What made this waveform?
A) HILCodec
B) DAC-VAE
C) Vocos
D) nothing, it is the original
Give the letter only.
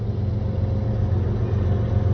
D